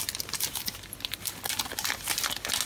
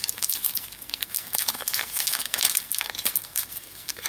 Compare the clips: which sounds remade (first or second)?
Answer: second